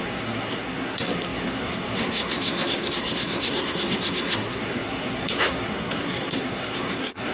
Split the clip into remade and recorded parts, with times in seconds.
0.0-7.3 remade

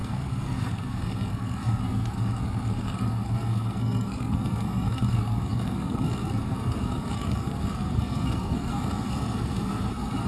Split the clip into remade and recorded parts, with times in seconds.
0.0-10.3 remade

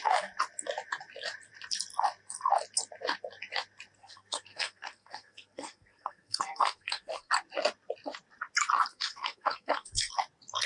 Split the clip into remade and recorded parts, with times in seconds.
0.0-4.0 recorded; 4.0-7.3 remade; 7.3-8.9 recorded; 8.9-10.1 remade; 10.1-10.7 recorded